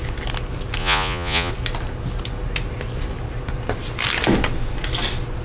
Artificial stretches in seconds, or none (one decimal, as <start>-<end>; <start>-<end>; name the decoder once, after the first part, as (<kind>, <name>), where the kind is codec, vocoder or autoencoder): 0.8-1.5 (vocoder, Vocos)